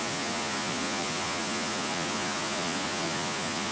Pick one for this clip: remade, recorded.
remade